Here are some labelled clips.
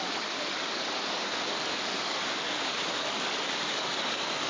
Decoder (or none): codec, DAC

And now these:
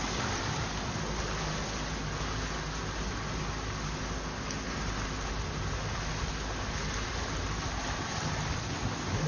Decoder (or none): none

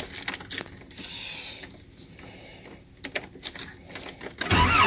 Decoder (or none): none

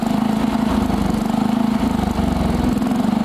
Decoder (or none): none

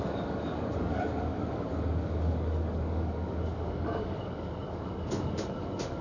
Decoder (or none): codec, DAC